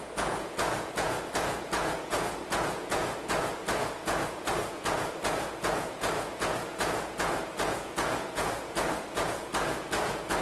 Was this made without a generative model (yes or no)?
no